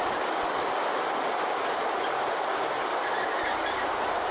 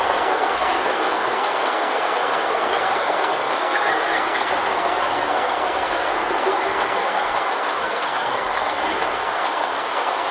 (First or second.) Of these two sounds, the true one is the first